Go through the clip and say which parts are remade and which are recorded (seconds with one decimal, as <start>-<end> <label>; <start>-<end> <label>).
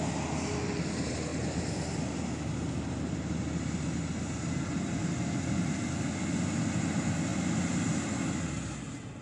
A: 0.0-9.2 recorded